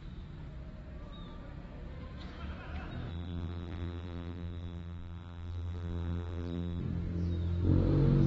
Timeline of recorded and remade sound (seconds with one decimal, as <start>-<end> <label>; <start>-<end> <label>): 0.0-3.1 recorded; 3.1-6.8 remade; 6.8-8.3 recorded